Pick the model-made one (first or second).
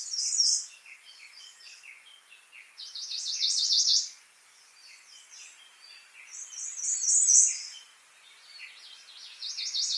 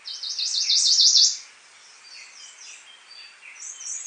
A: first